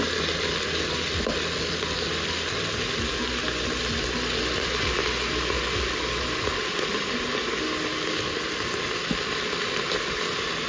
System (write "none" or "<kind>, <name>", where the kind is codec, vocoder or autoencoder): none